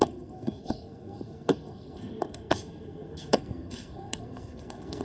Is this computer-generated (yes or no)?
yes